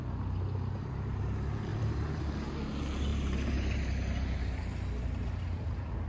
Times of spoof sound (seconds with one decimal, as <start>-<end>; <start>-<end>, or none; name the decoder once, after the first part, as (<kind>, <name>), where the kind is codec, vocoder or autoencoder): 1.7-2.2 (vocoder, BigVGAN v2); 3.1-4.6